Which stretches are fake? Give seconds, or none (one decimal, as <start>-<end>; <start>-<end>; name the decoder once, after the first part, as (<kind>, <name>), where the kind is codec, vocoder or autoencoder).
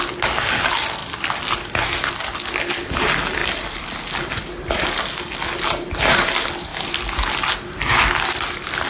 6.7-7.5 (vocoder, BigVGAN v2)